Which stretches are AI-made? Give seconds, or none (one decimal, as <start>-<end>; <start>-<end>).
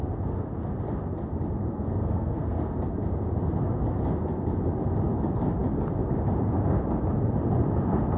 1.6-2.6